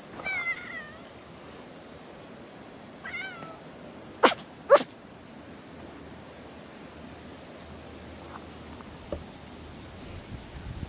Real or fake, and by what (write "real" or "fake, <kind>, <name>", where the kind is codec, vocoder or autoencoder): real